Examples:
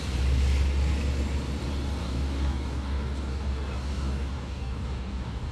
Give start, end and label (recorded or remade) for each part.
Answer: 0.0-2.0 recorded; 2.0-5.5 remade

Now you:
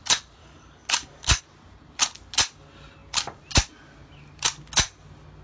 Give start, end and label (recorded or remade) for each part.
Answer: 0.0-0.4 recorded; 0.4-1.4 remade; 1.4-5.4 recorded

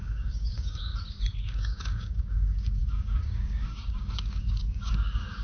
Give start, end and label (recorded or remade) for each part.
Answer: 0.0-0.9 remade; 0.9-1.4 recorded; 1.4-5.4 remade